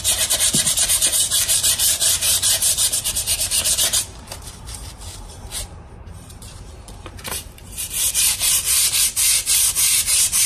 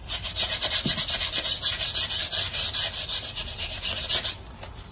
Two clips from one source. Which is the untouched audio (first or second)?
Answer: second